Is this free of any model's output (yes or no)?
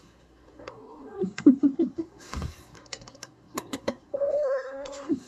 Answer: no